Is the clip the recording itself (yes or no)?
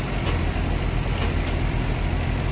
yes